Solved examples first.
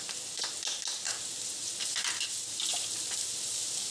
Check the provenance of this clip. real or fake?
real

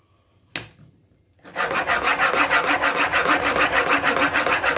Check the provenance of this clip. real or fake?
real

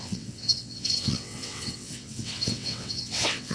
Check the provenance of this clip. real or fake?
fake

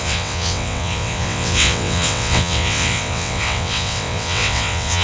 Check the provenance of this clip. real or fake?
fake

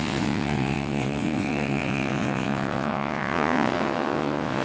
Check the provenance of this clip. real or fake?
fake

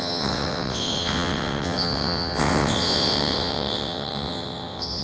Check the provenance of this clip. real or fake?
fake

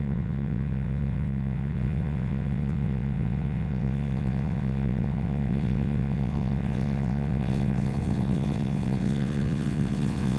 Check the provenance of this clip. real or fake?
fake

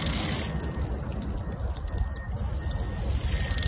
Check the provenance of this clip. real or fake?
real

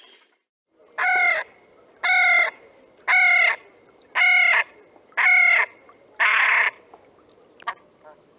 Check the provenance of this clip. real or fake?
real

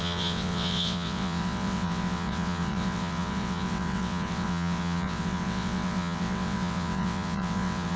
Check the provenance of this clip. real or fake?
fake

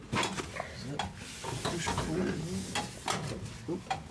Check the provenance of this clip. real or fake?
real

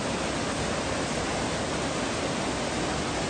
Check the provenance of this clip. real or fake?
real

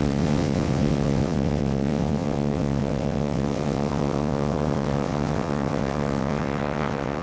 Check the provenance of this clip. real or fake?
fake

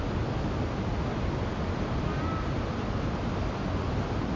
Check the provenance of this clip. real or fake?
real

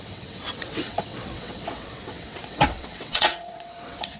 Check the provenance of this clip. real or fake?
fake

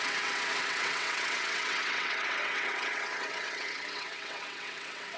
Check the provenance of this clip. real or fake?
fake